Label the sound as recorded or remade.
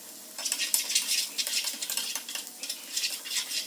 recorded